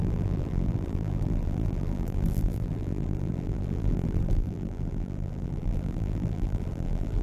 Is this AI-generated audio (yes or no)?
yes